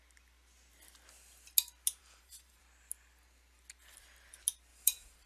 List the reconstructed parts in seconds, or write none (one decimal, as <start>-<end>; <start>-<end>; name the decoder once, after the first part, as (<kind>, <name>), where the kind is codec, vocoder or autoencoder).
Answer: 2.0-2.6 (vocoder, BigVGAN v2); 4.7-5.3